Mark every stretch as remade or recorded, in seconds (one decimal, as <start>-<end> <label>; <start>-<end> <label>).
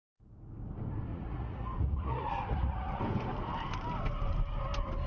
0.0-1.1 recorded; 1.1-3.0 remade; 3.0-5.1 recorded